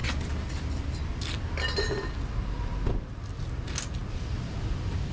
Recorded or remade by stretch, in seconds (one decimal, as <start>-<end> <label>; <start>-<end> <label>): 0.0-5.1 recorded

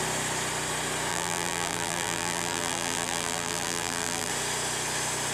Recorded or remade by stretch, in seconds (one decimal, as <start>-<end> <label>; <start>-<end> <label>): 0.0-1.1 recorded; 1.1-4.3 remade; 4.3-5.3 recorded